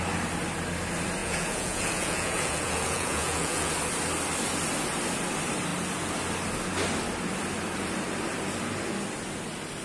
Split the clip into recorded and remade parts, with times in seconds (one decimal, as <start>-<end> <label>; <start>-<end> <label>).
0.0-1.2 recorded; 1.2-3.7 remade; 3.7-9.8 recorded